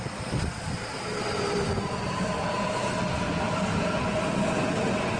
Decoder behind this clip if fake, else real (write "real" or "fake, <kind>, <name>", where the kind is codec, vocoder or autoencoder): real